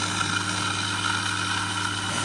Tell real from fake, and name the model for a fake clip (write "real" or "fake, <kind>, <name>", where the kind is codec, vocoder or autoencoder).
real